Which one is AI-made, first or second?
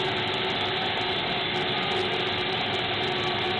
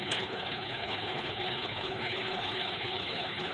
second